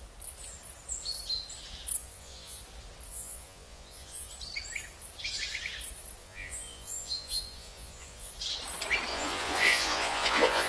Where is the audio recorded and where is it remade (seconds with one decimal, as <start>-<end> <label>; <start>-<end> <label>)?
0.0-2.0 recorded; 2.0-2.6 remade; 2.6-3.1 recorded; 3.1-4.3 remade; 4.3-6.2 recorded; 6.2-8.3 remade; 8.3-9.1 recorded; 9.1-10.7 remade